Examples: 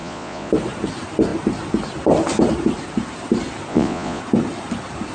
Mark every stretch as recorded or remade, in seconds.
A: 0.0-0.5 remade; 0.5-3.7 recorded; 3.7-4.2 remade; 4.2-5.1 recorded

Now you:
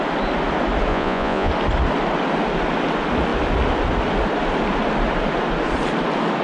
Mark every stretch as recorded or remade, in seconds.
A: 0.0-0.9 recorded; 0.9-1.5 remade; 1.5-6.4 recorded

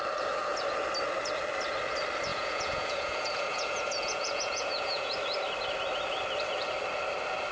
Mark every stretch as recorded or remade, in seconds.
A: 0.0-2.3 recorded; 2.3-5.1 remade; 5.1-7.5 recorded

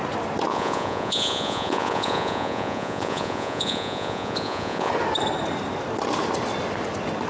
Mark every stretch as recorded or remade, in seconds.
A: 0.0-0.5 recorded; 0.5-4.9 remade; 4.9-7.3 recorded

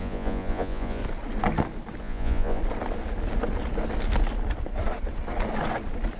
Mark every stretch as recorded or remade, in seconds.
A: 0.0-1.0 remade; 1.0-2.0 recorded; 2.0-2.6 remade; 2.6-6.2 recorded